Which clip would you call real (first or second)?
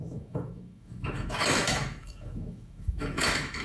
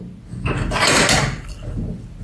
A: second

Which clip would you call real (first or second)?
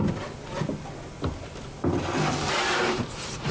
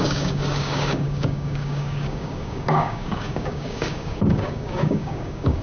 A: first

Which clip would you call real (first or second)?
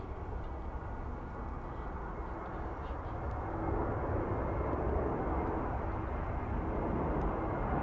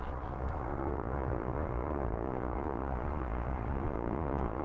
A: first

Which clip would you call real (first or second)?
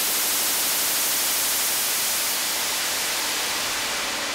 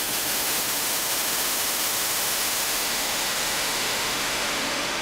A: first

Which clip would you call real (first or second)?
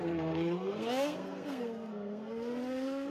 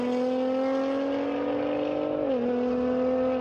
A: second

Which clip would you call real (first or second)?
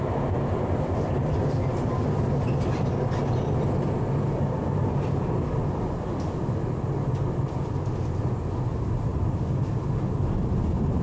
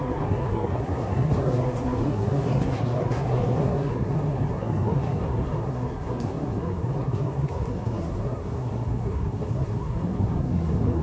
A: first